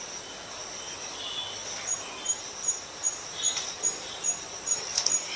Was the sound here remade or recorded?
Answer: recorded